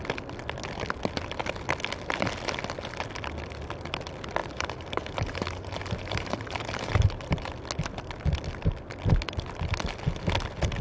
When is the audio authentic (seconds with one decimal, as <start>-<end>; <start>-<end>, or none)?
0.0-4.4; 7.5-10.8